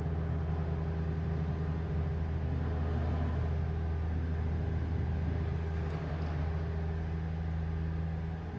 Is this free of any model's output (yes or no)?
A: yes